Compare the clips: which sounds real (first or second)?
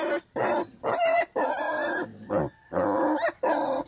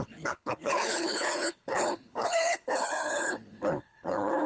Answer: first